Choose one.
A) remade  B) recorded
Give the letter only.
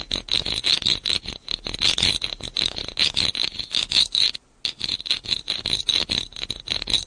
B